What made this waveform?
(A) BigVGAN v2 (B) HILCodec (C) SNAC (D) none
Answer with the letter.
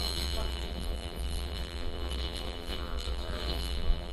A